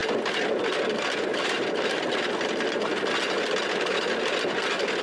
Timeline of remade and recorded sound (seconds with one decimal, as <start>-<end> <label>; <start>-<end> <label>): 0.0-1.3 recorded; 1.3-2.1 remade; 2.1-5.0 recorded